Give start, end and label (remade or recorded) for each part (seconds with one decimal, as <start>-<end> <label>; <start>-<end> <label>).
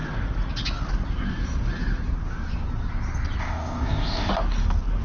0.0-3.4 recorded; 3.4-4.3 remade; 4.3-5.0 recorded